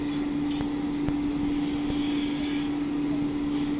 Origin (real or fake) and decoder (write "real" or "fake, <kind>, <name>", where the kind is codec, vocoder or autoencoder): real